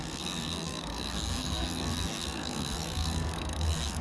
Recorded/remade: remade